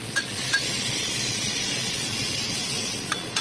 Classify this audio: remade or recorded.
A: remade